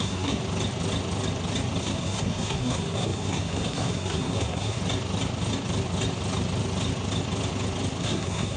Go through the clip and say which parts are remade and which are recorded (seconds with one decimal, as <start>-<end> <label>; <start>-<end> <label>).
0.0-0.4 remade; 0.4-1.8 recorded; 1.8-4.8 remade; 4.8-8.0 recorded; 8.0-8.6 remade